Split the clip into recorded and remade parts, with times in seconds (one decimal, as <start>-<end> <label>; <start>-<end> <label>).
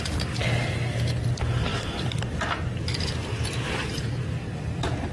0.0-1.7 recorded; 1.7-5.1 remade